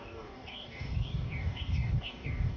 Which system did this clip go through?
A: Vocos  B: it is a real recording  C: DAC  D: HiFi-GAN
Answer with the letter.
C